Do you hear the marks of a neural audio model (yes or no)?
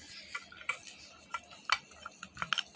no